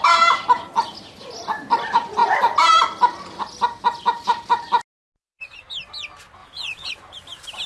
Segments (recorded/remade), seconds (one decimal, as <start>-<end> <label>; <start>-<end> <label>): 0.0-6.4 recorded; 6.4-6.9 remade; 6.9-7.7 recorded